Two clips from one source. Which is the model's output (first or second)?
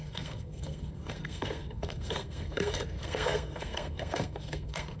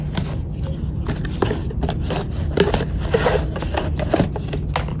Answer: first